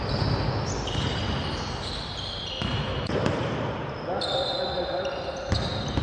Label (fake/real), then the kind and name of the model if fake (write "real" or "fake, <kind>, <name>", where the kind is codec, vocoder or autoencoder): real